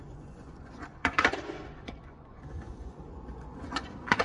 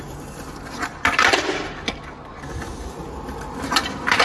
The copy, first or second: first